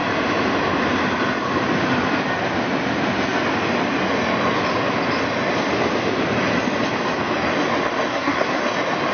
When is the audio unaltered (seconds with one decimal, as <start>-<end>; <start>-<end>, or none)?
0.0-8.1; 8.6-9.1